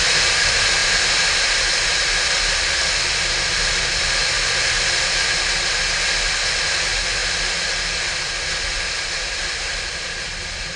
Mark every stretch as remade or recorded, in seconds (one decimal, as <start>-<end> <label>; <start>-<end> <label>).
0.0-10.8 recorded